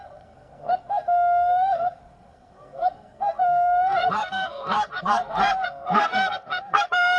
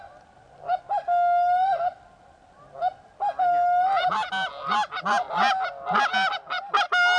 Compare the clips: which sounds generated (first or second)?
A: first